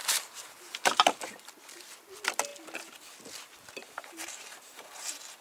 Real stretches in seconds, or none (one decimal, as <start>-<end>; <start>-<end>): 1.5-3.8